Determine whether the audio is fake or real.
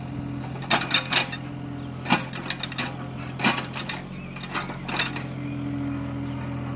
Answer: real